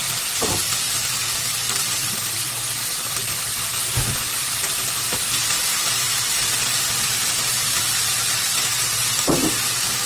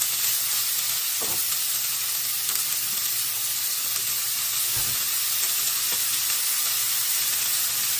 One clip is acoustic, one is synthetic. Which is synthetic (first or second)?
first